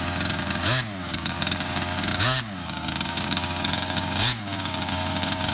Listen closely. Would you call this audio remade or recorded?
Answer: remade